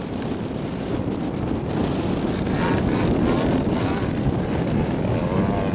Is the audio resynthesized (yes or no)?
yes